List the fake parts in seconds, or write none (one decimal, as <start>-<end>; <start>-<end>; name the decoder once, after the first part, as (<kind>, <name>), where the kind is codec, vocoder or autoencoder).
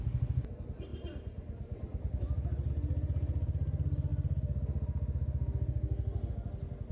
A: none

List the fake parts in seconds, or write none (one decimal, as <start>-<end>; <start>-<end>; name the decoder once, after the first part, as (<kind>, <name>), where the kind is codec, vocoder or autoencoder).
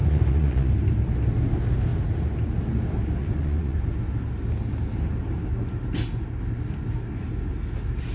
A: 0.0-0.7 (vocoder, Vocos); 3.2-3.8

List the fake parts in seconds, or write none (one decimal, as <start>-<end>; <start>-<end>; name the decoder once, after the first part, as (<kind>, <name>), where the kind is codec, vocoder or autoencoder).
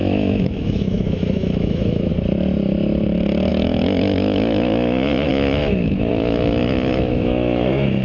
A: 0.0-2.1 (autoencoder, DAC-VAE); 3.5-8.0